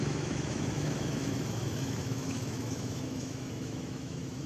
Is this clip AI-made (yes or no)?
yes